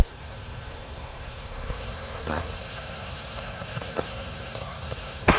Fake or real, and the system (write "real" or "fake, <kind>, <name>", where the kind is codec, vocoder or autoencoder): fake, codec, SNAC